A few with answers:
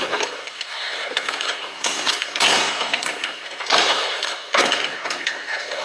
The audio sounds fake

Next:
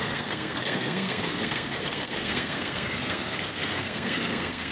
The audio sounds fake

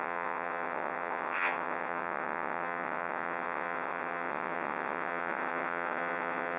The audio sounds fake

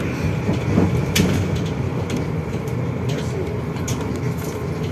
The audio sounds real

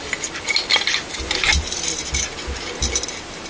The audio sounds real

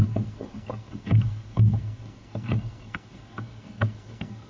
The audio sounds fake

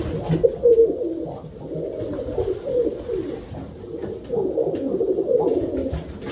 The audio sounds real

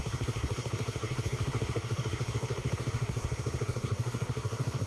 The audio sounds fake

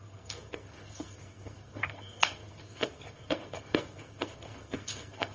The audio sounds fake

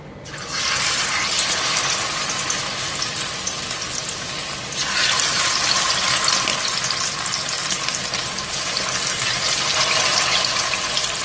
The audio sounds real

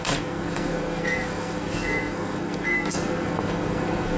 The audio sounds fake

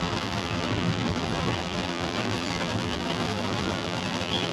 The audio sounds fake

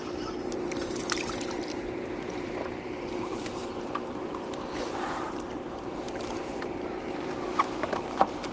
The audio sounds fake